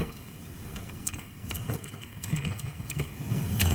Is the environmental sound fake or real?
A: fake